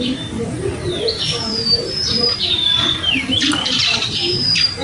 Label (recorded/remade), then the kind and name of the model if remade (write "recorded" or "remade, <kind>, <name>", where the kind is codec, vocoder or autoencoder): remade, vocoder, BigVGAN v2